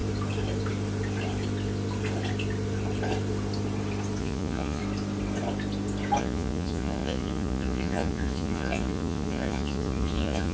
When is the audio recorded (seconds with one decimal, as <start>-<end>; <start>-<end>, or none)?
0.0-4.2; 4.8-6.2